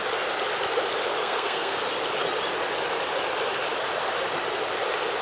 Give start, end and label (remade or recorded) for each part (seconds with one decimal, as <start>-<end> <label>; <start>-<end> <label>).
0.0-1.2 recorded; 1.2-1.8 remade; 1.8-5.2 recorded